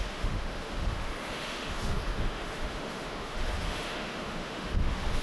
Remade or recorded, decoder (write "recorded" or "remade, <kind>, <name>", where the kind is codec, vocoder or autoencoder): remade, autoencoder, DAC-VAE